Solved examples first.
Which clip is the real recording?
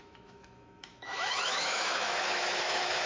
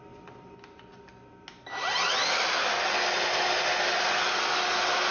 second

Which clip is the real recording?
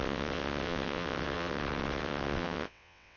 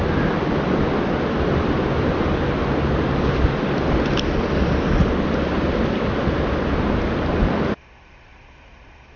second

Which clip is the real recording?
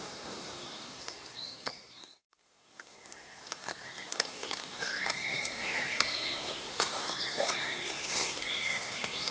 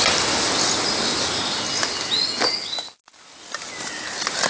second